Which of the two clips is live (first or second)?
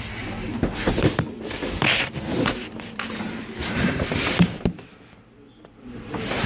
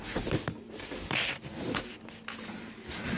second